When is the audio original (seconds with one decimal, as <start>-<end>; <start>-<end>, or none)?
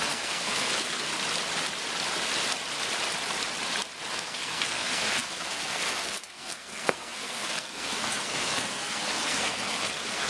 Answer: 1.1-4.1